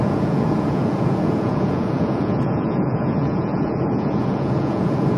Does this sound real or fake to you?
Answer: fake